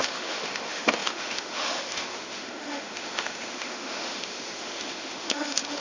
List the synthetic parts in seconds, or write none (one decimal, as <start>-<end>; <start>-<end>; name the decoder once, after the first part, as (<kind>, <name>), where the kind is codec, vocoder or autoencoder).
0.0-5.8 (autoencoder, DAC-VAE)